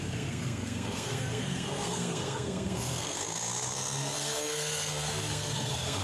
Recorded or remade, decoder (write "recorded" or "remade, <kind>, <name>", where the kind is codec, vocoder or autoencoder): remade, codec, SNAC